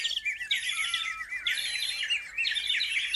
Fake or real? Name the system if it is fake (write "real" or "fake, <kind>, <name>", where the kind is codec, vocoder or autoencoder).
real